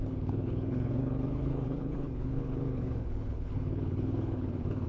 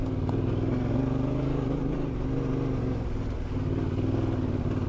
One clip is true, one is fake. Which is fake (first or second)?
first